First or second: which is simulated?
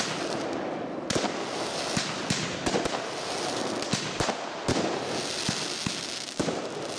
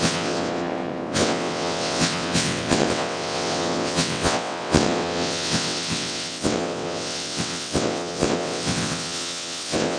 second